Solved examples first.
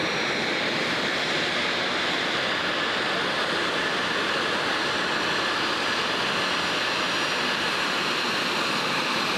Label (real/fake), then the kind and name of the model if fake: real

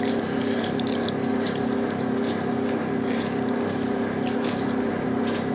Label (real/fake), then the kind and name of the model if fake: fake, vocoder, BigVGAN v2